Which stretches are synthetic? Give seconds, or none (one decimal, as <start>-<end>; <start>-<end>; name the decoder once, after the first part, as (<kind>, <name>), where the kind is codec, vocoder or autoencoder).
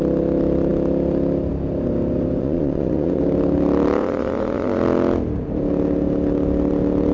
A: 2.4-3.2 (vocoder, Vocos); 4.0-4.8